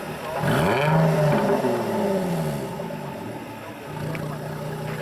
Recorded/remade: recorded